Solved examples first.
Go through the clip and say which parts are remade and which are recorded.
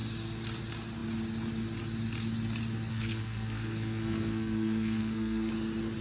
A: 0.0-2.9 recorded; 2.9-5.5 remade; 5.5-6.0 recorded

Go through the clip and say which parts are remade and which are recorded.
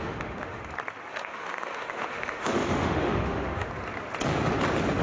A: 0.0-0.6 remade; 0.6-1.1 recorded; 1.1-3.7 remade; 3.7-5.0 recorded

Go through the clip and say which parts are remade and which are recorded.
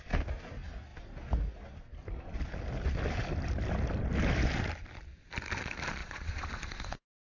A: 0.0-6.0 recorded; 6.0-7.3 remade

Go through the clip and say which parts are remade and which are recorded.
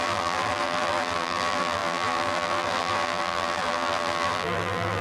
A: 0.0-5.0 remade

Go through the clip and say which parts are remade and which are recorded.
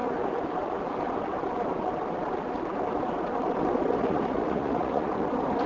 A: 0.0-4.0 recorded; 4.0-5.1 remade; 5.1-5.7 recorded